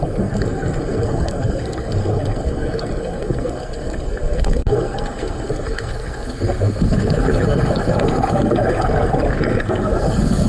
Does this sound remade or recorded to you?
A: remade